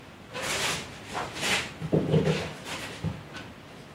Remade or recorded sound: recorded